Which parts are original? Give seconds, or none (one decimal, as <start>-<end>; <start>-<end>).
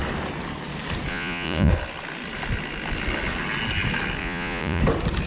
0.0-1.1; 1.7-4.2; 4.8-5.3